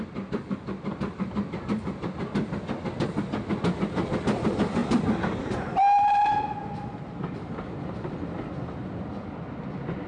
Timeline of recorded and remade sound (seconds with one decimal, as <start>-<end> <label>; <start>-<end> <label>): 0.0-10.1 recorded